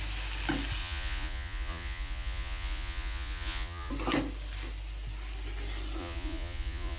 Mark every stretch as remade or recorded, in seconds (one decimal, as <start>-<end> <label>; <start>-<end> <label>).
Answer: 0.0-0.8 recorded; 0.8-3.9 remade; 3.9-6.0 recorded; 6.0-7.0 remade

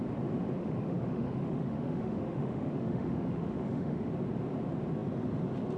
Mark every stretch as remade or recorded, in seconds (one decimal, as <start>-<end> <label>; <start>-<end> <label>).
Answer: 0.0-0.6 recorded; 0.6-4.1 remade; 4.1-5.8 recorded

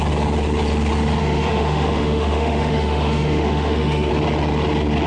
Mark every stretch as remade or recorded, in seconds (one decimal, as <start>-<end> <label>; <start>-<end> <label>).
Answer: 0.0-1.2 recorded; 1.2-4.1 remade; 4.1-5.1 recorded

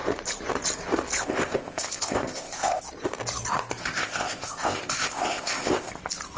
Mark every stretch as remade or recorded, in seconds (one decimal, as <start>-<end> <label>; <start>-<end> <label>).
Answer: 0.0-1.2 recorded; 1.2-2.8 remade; 2.8-3.8 recorded; 3.8-5.9 remade; 5.9-6.4 recorded

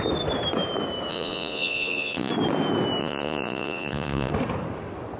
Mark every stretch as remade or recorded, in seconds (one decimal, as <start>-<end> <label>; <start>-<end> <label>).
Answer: 0.0-1.1 recorded; 1.1-2.3 remade; 2.3-3.0 recorded; 3.0-4.3 remade; 4.3-5.2 recorded

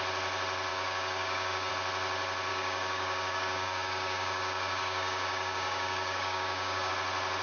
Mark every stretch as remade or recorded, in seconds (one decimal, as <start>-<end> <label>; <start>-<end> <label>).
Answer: 0.0-0.7 recorded; 0.7-1.7 remade; 1.7-2.5 recorded; 2.5-6.9 remade; 6.9-7.4 recorded

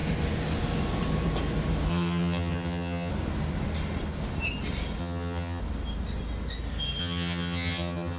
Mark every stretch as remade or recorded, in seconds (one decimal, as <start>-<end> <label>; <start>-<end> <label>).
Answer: 0.0-1.9 recorded; 1.9-3.1 remade; 3.1-5.0 recorded; 5.0-5.6 remade; 5.6-7.0 recorded; 7.0-8.2 remade